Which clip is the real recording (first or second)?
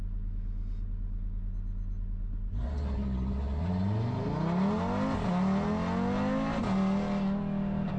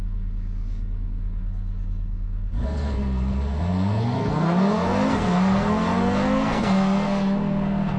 first